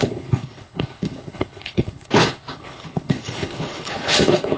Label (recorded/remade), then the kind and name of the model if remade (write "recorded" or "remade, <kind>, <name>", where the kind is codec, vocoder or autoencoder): remade, codec, HILCodec